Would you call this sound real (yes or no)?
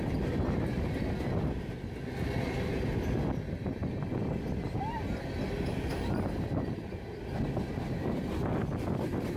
yes